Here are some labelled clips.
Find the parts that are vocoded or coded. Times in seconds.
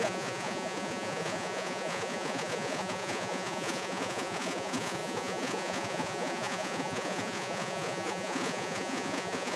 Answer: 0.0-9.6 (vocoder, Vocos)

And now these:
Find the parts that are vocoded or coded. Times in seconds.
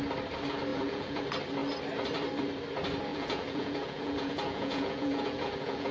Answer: 0.7-1.2 (vocoder, Vocos); 3.1-5.9